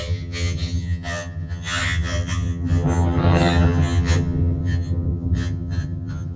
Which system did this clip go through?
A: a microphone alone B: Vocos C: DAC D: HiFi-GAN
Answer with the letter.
D